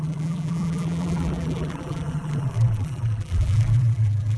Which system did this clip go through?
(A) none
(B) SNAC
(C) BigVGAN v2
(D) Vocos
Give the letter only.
C